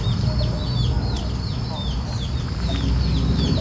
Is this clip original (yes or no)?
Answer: yes